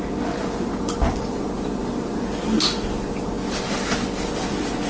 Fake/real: real